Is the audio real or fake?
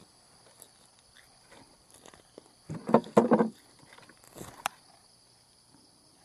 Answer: real